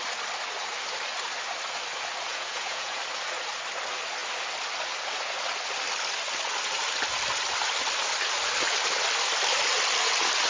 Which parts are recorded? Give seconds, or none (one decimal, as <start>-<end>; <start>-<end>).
0.0-2.3; 3.0-10.5